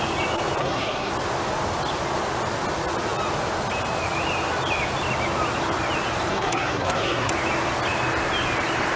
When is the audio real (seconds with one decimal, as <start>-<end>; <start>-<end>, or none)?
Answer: 0.0-0.6; 1.1-6.3; 7.3-9.0